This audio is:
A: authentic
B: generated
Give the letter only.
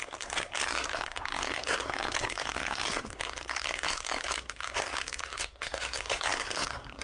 B